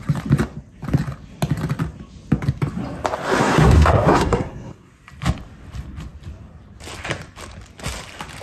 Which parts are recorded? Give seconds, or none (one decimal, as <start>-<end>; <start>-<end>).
0.0-3.4; 4.9-8.4